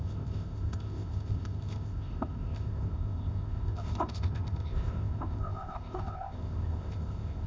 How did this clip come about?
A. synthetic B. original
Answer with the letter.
A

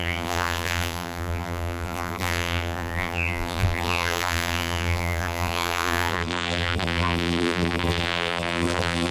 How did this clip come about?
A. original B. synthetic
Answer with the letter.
B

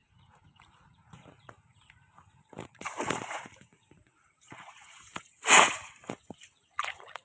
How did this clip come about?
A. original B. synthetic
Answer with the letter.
B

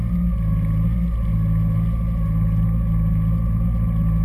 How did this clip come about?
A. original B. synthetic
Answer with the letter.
A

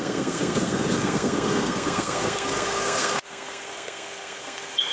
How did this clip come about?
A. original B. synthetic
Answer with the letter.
B